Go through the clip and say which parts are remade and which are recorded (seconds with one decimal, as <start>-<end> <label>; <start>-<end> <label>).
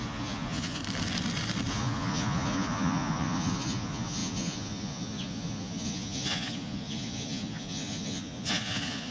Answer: 0.0-0.8 remade; 0.8-1.7 recorded; 1.7-9.1 remade